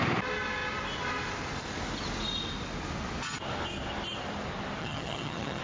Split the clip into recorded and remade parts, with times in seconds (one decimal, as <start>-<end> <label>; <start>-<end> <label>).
0.0-4.8 recorded; 4.8-5.6 remade